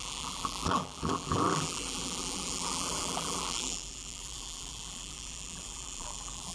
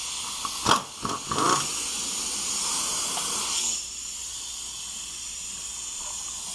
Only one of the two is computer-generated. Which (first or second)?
first